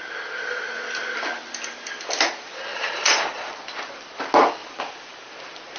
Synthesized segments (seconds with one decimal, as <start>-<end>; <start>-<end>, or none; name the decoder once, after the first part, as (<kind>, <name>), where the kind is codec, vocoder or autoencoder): 2.7-3.6 (vocoder, BigVGAN v2); 4.6-5.3